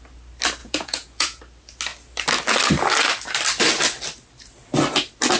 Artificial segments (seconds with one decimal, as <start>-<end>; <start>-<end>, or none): 0.6-1.4